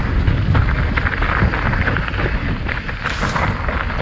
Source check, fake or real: real